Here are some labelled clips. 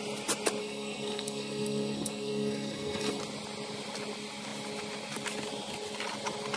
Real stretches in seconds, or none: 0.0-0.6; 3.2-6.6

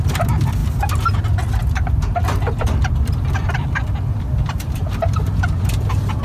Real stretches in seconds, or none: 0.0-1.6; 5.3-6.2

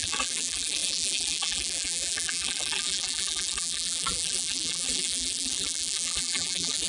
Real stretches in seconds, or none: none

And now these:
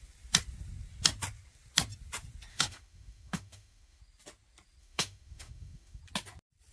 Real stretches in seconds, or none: 0.0-2.5; 4.0-4.8; 6.0-6.7

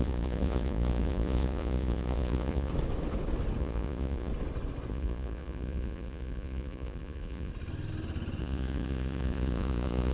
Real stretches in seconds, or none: 2.7-3.6; 4.3-4.9; 7.5-8.4

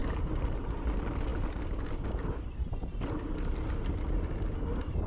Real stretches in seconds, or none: 0.8-5.1

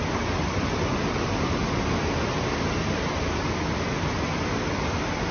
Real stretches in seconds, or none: 0.0-5.3